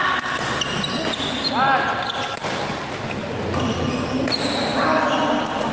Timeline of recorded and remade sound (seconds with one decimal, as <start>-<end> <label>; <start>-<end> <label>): 0.0-5.7 recorded